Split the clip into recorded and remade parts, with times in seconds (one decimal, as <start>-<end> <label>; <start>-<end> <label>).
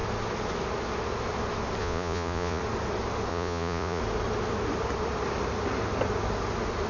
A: 0.0-1.8 recorded; 1.8-2.6 remade; 2.6-3.3 recorded; 3.3-4.0 remade; 4.0-6.9 recorded